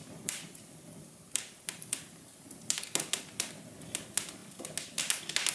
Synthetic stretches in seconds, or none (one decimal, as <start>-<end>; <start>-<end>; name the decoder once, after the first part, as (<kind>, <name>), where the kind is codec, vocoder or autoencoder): 0.0-2.1 (vocoder, BigVGAN v2)